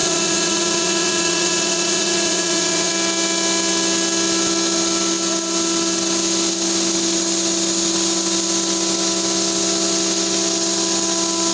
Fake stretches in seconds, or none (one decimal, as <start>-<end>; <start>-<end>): 0.0-2.9